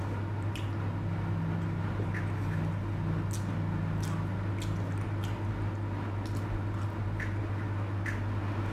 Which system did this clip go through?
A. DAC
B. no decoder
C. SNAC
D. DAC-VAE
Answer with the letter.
B